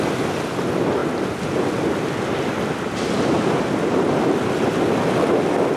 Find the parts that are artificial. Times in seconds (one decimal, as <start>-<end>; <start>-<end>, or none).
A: none